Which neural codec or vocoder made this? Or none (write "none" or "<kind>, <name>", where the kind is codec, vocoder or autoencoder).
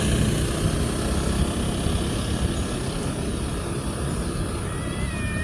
none